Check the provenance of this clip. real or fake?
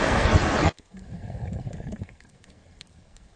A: fake